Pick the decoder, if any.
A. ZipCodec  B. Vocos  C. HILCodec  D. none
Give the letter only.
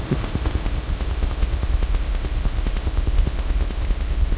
A